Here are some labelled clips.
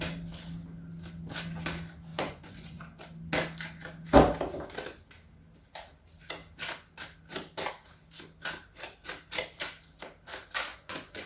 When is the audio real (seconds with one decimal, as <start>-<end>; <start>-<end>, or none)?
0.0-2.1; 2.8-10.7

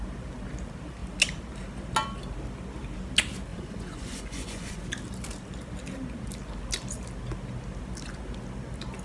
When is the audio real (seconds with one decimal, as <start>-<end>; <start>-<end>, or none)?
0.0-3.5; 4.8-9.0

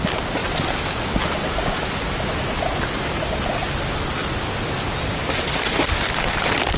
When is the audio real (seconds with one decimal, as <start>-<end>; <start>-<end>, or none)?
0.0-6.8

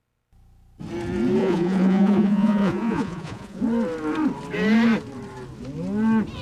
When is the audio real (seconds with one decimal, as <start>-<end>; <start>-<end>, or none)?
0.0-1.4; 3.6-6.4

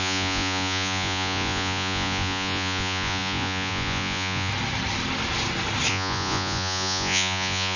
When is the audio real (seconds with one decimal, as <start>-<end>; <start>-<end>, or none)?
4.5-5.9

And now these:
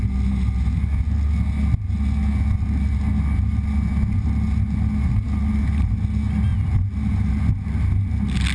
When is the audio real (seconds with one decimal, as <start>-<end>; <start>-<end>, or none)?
0.0-8.5

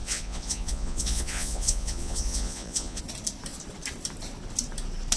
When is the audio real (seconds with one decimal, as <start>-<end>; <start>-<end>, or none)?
3.0-5.2

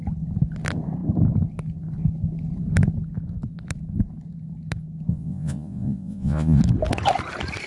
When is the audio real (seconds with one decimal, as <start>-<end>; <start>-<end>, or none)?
0.0-5.1; 6.6-7.7